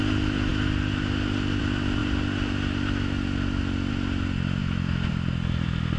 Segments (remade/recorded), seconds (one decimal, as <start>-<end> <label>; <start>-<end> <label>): 0.0-4.6 recorded; 4.6-5.1 remade; 5.1-6.0 recorded